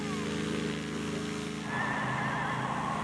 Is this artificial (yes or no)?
no